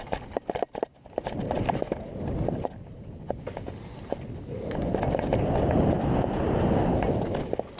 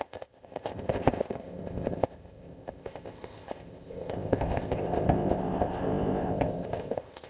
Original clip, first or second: first